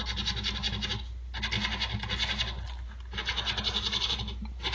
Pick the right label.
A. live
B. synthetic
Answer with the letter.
A